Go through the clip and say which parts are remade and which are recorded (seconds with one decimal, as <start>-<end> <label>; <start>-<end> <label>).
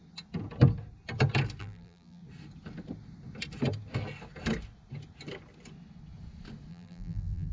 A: 0.0-1.6 recorded; 1.6-2.2 remade; 2.2-6.7 recorded; 6.7-7.5 remade